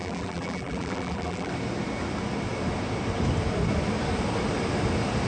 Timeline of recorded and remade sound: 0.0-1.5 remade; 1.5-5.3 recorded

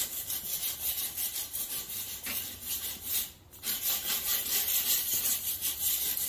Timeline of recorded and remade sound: 0.0-6.3 remade

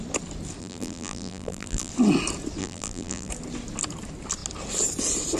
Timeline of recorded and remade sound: 0.0-0.6 recorded; 0.6-1.9 remade; 1.9-2.6 recorded; 2.6-3.3 remade; 3.3-5.4 recorded

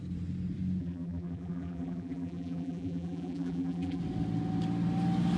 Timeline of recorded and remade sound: 0.0-0.8 recorded; 0.8-4.0 remade; 4.0-5.4 recorded

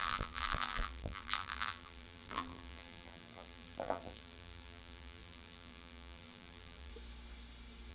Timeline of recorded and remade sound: 0.0-6.9 remade; 6.9-7.9 recorded

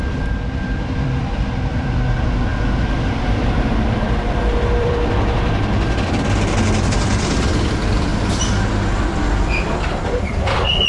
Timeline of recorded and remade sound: 0.0-8.1 remade; 8.1-10.3 recorded; 10.3-10.9 remade

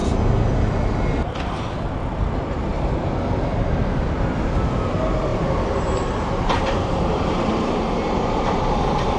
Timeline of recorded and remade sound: 0.0-5.3 recorded; 5.3-8.7 remade; 8.7-9.2 recorded

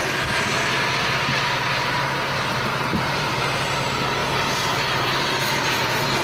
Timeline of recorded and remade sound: 0.0-1.3 remade; 1.3-2.9 recorded; 2.9-3.6 remade; 3.6-6.2 recorded